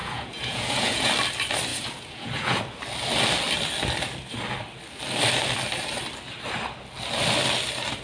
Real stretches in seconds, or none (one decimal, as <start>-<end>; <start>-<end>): 1.1-1.7; 2.6-8.0